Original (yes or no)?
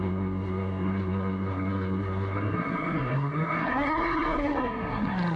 no